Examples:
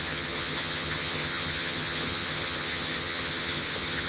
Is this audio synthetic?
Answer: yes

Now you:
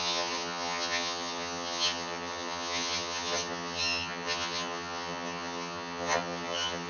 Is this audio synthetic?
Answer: yes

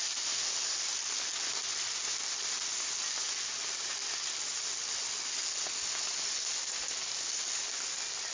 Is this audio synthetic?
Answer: no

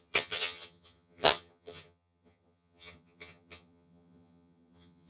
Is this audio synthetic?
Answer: yes